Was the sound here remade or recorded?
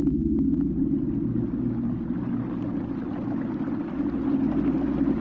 recorded